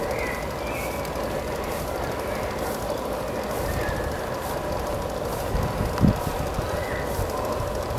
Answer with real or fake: real